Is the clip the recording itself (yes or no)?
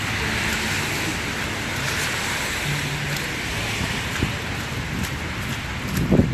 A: yes